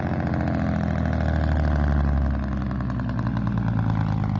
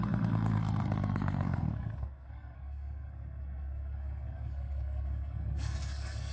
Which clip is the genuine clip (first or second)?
first